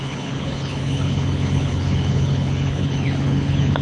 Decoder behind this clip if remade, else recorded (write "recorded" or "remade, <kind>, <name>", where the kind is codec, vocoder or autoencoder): remade, codec, HILCodec